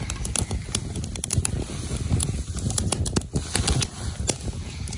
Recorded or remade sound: recorded